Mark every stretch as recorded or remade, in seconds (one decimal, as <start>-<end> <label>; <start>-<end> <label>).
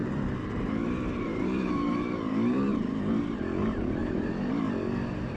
0.0-3.2 remade; 3.2-4.0 recorded; 4.0-4.5 remade; 4.5-5.4 recorded